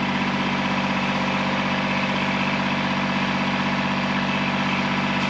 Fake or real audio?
real